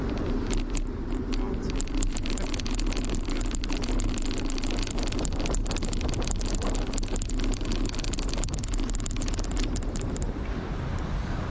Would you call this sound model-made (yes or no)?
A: no